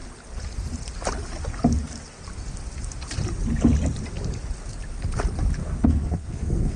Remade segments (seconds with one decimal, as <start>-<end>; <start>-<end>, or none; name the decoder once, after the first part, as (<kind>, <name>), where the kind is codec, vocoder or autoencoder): 5.6-6.8 (codec, SNAC)